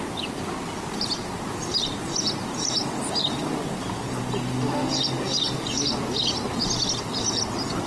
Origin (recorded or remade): recorded